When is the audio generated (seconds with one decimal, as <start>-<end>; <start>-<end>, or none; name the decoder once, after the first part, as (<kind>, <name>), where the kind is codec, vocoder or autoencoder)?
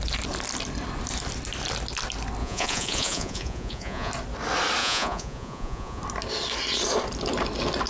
2.4-4.1 (vocoder, Vocos); 4.8-6.0